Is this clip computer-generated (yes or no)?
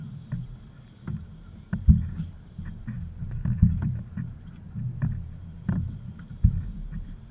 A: yes